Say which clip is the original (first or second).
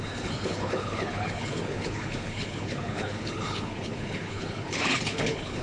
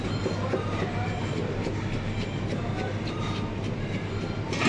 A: second